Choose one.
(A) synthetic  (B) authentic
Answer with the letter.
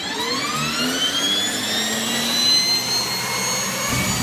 B